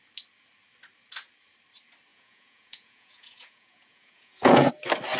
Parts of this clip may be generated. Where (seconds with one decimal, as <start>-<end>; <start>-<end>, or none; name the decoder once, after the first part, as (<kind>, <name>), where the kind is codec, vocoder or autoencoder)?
2.1-4.7 (vocoder, Vocos)